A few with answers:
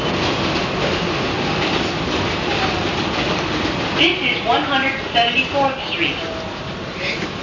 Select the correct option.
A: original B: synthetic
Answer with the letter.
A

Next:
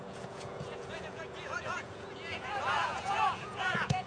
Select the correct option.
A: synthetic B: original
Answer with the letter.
A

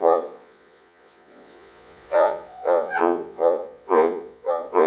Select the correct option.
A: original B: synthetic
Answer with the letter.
B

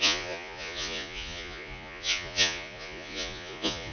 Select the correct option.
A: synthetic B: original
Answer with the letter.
A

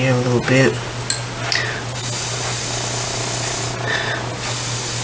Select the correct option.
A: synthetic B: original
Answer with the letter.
B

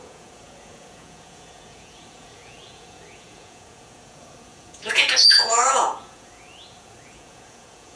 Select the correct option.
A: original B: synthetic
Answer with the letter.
B